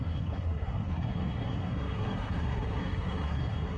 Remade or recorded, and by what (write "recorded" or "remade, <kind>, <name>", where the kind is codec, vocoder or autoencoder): remade, codec, SNAC